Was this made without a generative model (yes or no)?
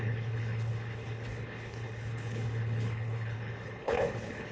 no